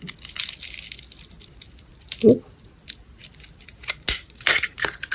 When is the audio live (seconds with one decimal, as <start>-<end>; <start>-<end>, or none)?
0.0-5.1